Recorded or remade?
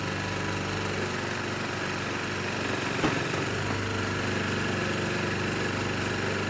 recorded